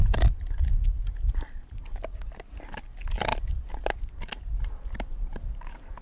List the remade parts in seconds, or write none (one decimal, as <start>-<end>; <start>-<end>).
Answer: none

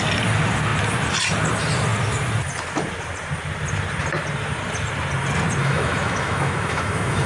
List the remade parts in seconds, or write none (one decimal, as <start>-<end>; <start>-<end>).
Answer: 5.6-7.3

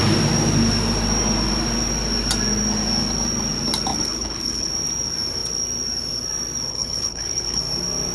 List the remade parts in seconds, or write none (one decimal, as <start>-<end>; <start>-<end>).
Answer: 3.9-4.7; 6.7-7.6

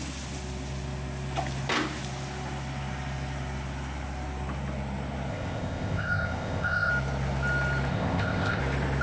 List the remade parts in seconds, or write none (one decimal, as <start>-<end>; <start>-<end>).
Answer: 5.3-6.9; 7.9-8.6

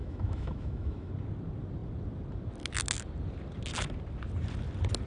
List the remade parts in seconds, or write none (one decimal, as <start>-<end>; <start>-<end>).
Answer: 0.0-1.1

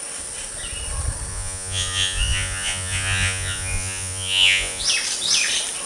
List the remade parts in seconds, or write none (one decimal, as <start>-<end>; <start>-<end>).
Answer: 1.3-4.8

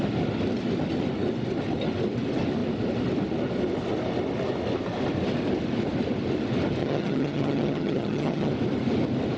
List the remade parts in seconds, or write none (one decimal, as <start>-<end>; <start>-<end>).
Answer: 6.8-8.5